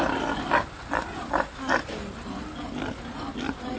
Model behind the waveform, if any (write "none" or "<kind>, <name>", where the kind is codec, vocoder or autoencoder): none